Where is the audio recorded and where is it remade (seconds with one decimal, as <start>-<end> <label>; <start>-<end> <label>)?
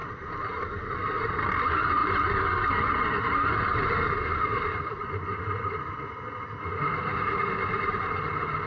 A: 0.0-8.7 recorded